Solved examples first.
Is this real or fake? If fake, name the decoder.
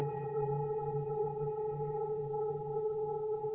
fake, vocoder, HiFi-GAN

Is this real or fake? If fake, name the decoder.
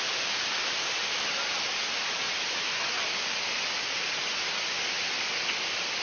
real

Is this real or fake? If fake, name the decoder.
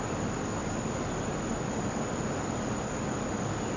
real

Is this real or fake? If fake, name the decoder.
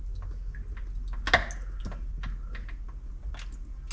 real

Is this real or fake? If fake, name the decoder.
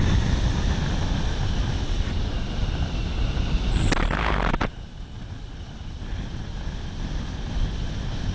real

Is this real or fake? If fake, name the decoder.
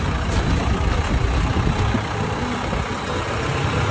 real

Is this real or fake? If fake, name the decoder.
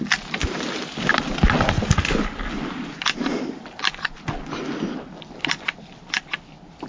real